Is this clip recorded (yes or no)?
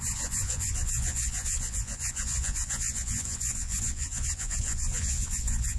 no